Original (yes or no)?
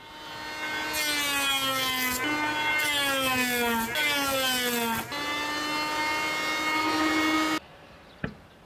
yes